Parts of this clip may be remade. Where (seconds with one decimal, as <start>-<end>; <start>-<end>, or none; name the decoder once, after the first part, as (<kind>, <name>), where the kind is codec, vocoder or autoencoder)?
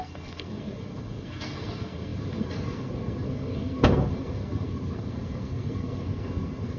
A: 0.0-6.8 (codec, SNAC)